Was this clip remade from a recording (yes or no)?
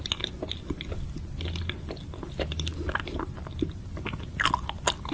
no